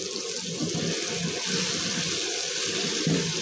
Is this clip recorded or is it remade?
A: recorded